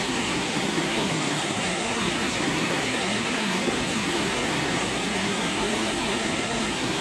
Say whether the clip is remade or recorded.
remade